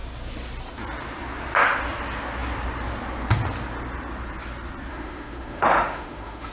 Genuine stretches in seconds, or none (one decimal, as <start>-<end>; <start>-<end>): 0.0-4.9